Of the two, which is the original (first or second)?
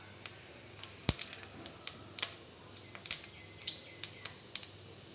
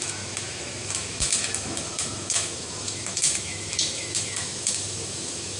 first